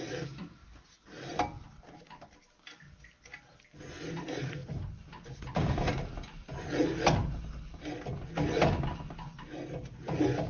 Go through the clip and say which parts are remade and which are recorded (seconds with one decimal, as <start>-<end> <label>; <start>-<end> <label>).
0.0-10.5 recorded